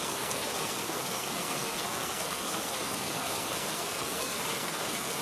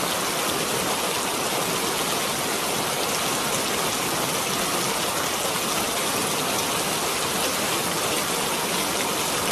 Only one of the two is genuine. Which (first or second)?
second